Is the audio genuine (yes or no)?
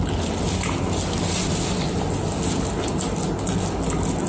yes